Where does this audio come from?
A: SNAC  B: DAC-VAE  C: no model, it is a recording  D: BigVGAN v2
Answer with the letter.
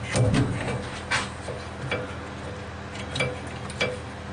C